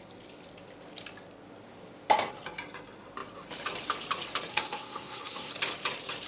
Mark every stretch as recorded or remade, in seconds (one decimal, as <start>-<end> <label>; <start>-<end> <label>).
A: 0.0-4.5 recorded; 4.5-5.5 remade; 5.5-6.3 recorded